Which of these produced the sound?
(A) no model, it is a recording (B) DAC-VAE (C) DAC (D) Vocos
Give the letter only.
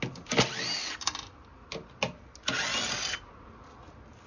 A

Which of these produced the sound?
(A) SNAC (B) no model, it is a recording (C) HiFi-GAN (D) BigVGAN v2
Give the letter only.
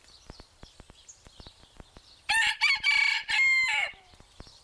D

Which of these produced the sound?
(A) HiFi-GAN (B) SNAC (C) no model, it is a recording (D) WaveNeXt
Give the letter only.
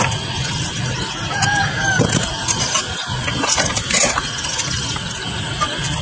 C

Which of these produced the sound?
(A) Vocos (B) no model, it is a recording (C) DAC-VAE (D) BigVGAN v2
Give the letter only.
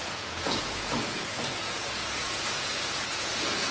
A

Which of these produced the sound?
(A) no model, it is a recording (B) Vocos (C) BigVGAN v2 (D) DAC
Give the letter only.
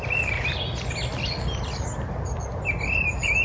A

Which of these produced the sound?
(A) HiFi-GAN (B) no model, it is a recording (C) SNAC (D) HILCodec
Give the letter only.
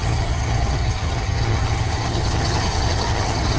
A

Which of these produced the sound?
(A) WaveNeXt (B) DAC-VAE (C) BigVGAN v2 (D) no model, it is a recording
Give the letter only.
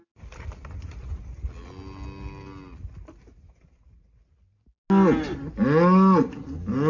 D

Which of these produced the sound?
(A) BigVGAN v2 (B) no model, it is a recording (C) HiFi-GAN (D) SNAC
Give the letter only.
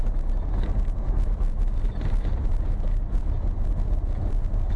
B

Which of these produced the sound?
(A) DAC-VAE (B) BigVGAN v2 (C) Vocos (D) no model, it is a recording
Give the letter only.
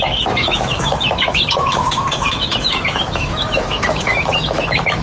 A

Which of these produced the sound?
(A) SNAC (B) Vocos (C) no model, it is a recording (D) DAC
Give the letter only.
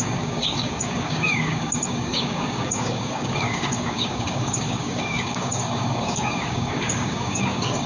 D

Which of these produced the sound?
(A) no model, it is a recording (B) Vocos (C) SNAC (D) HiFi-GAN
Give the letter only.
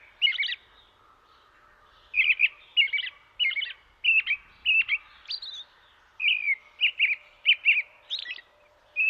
A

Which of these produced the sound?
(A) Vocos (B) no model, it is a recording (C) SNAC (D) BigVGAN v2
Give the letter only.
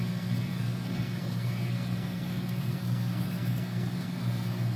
C